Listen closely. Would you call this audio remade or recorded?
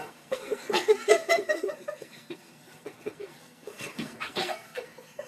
remade